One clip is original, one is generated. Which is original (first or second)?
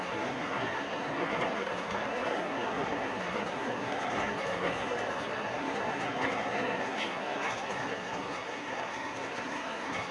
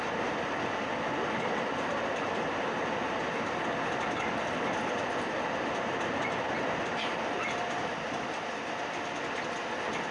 second